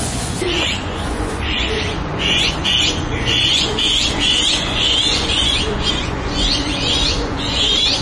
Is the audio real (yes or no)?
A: no